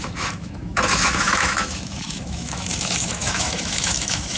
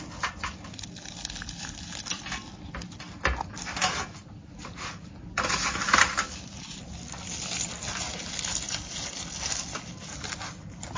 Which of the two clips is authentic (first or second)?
second